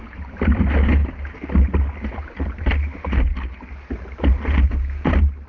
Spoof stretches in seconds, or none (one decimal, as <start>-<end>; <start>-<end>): none